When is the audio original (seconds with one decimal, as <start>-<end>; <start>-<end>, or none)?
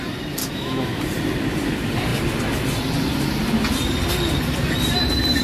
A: 0.0-0.4; 1.0-5.4